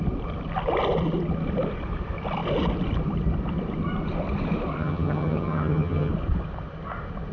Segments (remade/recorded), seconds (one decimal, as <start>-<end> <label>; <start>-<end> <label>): 0.0-4.8 recorded; 4.8-6.1 remade; 6.1-7.3 recorded